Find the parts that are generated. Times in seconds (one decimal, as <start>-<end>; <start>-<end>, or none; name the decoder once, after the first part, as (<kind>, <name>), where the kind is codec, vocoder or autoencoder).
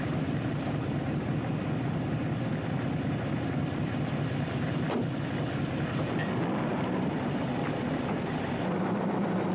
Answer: none